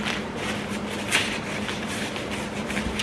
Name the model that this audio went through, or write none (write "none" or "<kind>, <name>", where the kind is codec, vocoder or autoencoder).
none